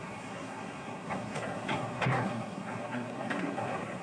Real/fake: fake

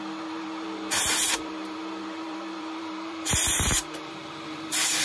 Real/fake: fake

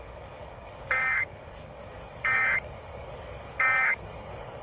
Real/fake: fake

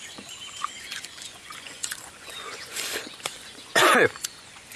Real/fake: fake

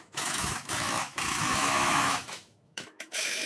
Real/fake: fake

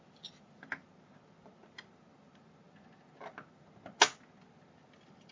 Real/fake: real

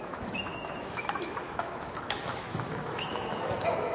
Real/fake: fake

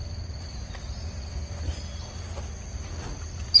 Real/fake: real